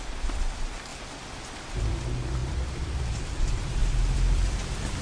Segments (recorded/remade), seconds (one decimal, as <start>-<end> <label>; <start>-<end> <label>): 0.0-0.9 recorded; 0.9-1.9 remade; 1.9-2.4 recorded; 2.4-3.0 remade; 3.0-3.8 recorded; 3.8-5.0 remade